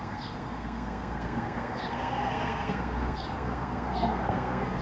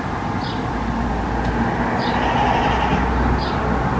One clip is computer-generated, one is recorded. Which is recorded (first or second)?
second